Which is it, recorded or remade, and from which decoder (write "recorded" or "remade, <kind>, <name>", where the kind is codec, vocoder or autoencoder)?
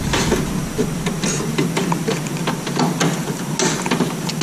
recorded